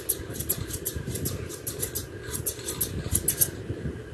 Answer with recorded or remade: recorded